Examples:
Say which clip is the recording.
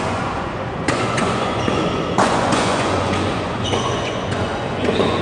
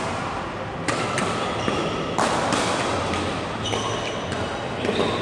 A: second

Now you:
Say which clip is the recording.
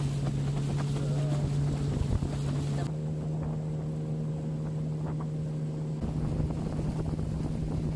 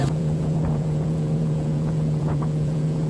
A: first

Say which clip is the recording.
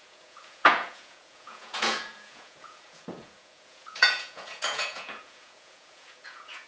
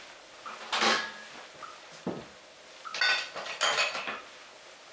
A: second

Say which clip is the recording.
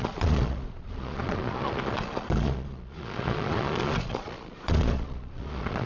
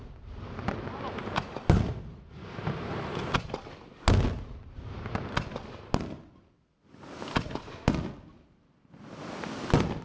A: second